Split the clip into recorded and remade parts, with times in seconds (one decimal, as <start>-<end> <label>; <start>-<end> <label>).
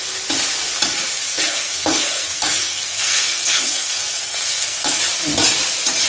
0.0-1.3 recorded; 1.3-5.0 remade; 5.0-6.1 recorded